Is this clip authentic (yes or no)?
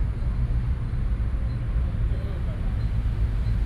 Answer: yes